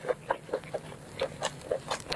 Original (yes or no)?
yes